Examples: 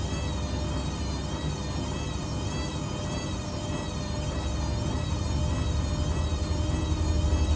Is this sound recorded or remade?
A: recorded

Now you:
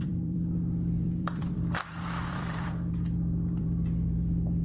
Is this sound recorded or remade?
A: remade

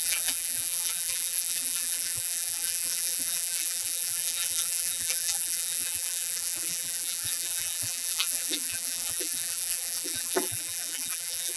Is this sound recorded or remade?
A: remade